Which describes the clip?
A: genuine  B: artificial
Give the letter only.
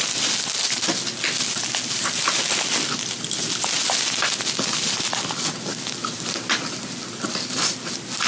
A